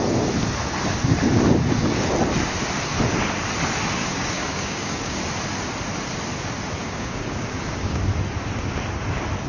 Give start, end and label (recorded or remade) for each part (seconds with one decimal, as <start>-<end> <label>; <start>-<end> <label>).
0.0-4.0 recorded; 4.0-5.2 remade; 5.2-6.8 recorded; 6.8-8.0 remade; 8.0-9.5 recorded